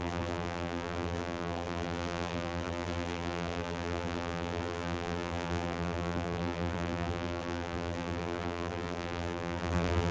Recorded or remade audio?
remade